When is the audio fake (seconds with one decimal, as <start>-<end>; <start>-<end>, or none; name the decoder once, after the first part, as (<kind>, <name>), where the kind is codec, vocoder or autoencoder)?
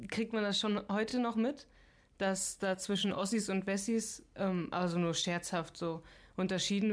2.6-3.4 (vocoder, WaveNeXt)